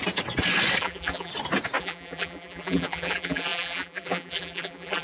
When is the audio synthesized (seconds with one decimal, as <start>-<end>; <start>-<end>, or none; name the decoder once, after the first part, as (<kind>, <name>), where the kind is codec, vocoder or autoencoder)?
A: 0.8-1.3 (vocoder, BigVGAN v2); 1.8-5.0